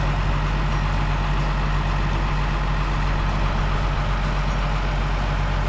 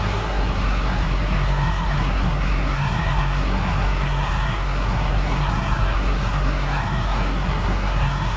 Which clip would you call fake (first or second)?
second